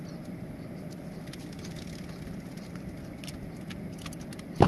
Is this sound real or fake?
real